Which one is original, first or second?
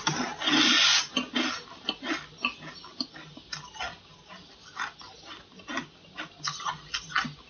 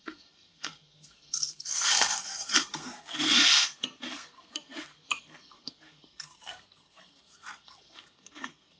first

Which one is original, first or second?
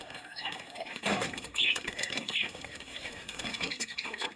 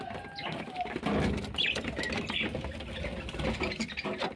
second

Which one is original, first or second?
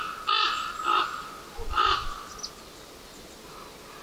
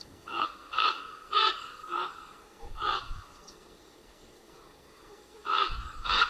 first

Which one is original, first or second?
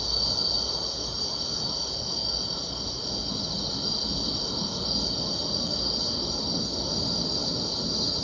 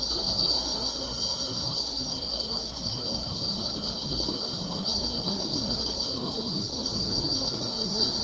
first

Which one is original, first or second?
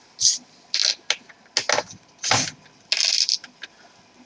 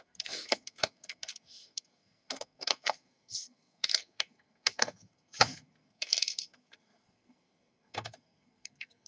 first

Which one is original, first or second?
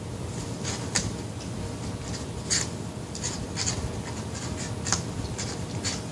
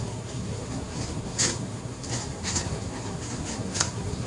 first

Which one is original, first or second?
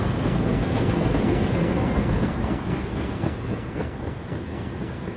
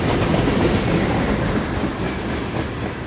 second